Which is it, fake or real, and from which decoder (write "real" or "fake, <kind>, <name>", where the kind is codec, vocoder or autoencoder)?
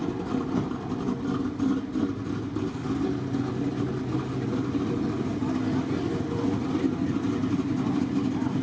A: real